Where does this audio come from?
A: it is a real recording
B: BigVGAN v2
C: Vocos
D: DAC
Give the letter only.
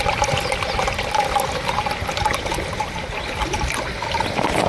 A